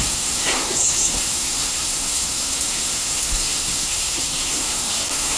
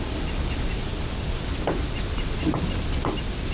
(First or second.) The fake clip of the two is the first